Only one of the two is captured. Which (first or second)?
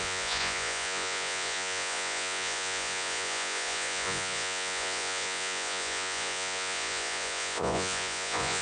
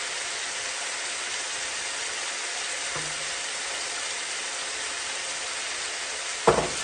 second